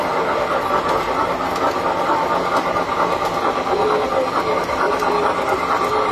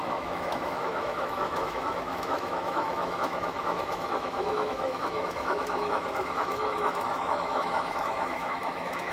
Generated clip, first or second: second